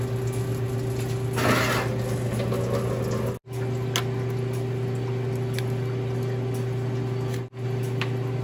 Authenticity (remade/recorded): recorded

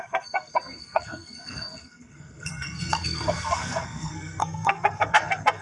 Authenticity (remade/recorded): remade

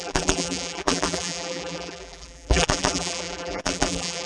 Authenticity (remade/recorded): remade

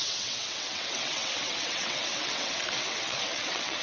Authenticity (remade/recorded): remade